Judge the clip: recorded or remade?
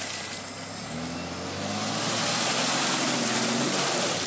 recorded